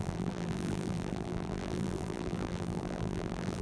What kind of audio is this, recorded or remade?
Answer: remade